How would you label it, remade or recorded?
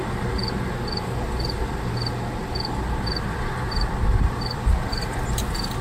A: recorded